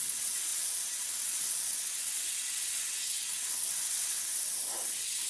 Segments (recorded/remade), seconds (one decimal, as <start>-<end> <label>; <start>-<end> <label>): 0.0-5.3 remade